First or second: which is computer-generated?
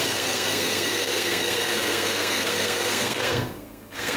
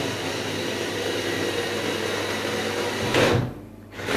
first